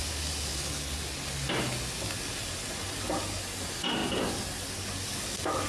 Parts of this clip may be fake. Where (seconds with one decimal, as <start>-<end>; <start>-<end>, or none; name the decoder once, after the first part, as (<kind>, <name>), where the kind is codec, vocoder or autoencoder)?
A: 0.5-1.0 (codec, HILCodec)